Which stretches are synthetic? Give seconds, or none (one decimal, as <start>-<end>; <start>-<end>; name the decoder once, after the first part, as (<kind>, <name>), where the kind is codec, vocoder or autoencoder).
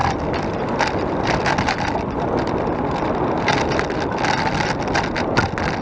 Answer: none